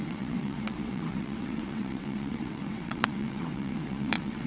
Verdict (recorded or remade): remade